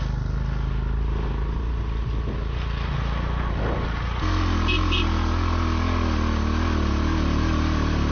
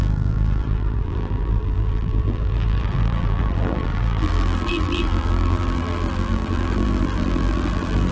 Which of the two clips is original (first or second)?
first